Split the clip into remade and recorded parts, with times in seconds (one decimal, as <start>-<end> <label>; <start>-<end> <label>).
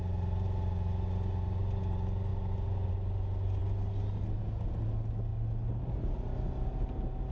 0.0-7.3 recorded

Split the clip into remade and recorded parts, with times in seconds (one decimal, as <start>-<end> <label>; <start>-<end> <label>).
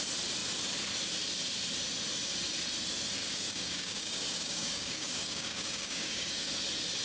0.0-3.2 recorded; 3.2-6.5 remade; 6.5-7.0 recorded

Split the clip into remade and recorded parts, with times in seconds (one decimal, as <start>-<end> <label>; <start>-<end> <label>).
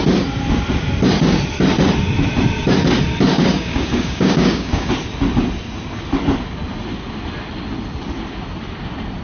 0.0-3.3 recorded; 3.3-4.9 remade; 4.9-9.2 recorded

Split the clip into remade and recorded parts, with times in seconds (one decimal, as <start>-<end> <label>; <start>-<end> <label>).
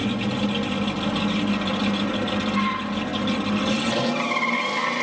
0.0-5.0 recorded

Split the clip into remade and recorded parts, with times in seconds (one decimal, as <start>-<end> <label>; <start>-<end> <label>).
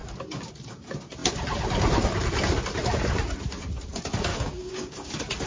0.0-4.3 recorded; 4.3-5.1 remade; 5.1-5.5 recorded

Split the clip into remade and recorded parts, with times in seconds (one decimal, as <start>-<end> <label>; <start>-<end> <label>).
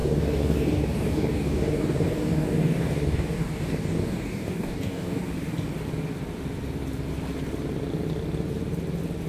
0.0-5.2 remade; 5.2-9.3 recorded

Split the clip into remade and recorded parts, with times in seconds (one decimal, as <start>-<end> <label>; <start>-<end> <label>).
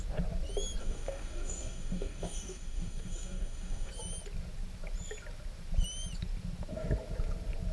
0.0-0.8 recorded; 0.8-3.9 remade; 3.9-7.7 recorded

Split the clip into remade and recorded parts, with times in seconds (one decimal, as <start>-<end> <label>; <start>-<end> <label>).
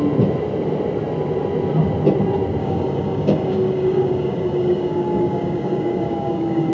0.0-2.6 recorded; 2.6-6.7 remade